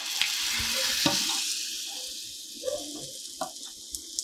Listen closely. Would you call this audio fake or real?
real